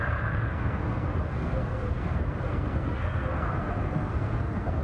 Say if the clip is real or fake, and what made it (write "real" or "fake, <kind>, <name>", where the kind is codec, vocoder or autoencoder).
fake, codec, SNAC